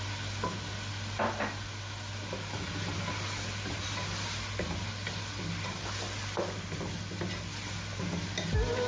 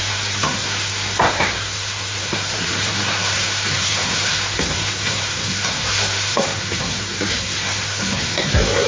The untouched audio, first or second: first